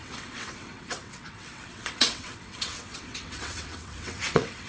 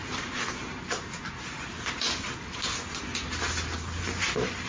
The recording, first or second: second